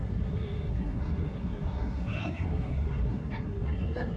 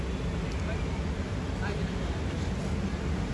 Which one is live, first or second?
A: second